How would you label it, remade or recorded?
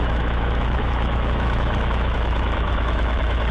remade